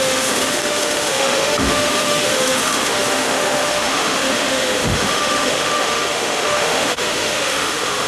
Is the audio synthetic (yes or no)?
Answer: yes